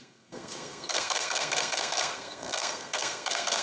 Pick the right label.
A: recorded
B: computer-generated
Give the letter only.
B